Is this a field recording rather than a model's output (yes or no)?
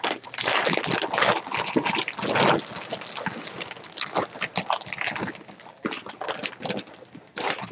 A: yes